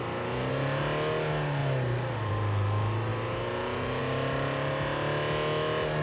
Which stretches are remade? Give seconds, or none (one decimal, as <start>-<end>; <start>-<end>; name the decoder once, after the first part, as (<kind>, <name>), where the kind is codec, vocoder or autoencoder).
none